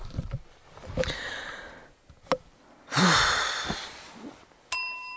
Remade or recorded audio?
recorded